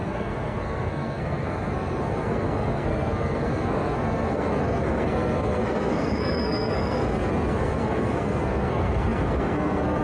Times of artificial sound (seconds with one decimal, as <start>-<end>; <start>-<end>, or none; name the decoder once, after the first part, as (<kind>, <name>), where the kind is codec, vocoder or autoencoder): 0.0-10.0 (codec, SNAC)